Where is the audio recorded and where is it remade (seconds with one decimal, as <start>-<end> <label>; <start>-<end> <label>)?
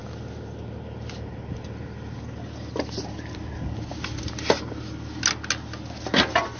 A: 0.0-6.6 recorded